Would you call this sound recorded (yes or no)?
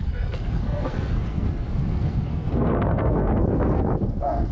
no